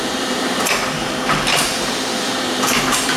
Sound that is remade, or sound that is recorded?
remade